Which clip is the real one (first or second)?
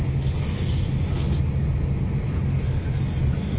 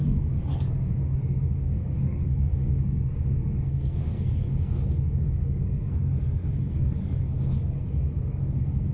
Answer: first